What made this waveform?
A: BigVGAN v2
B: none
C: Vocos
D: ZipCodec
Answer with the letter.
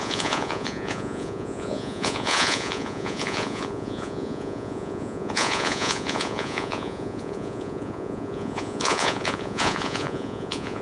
C